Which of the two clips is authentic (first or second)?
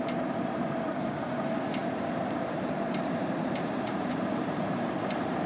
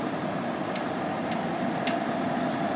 second